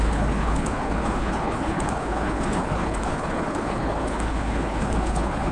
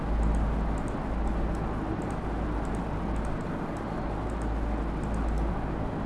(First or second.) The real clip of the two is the second